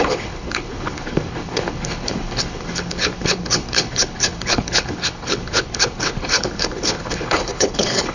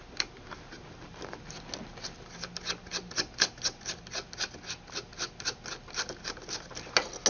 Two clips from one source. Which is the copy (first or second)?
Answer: first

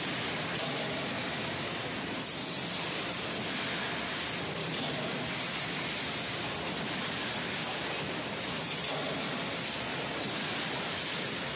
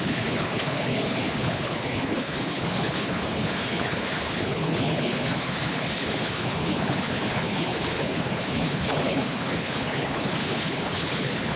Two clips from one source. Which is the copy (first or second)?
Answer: second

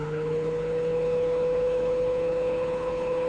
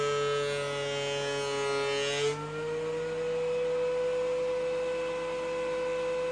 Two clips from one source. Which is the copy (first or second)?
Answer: first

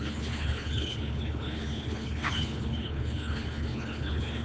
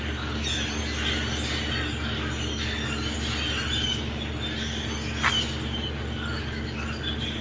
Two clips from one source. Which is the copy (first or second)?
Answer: first